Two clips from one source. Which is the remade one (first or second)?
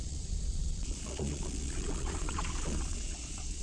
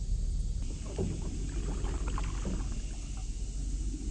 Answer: first